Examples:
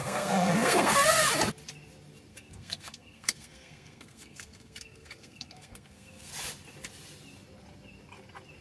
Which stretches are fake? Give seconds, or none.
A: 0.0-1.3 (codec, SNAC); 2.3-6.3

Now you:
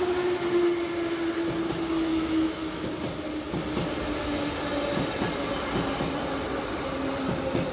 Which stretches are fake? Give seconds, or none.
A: 2.1-2.9 (autoencoder, DAC-VAE)

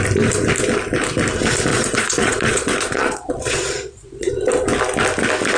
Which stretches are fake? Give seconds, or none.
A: 1.7-4.3 (vocoder, Vocos)

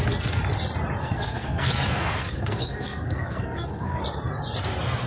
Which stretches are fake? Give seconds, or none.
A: 1.0-4.0 (codec, SNAC)